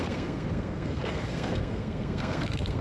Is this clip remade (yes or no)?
yes